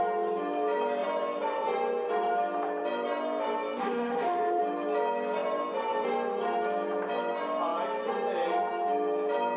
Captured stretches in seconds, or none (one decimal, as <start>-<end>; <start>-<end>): 0.0-3.8; 4.6-9.6